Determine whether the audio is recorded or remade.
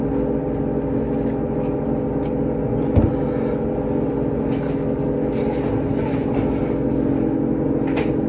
recorded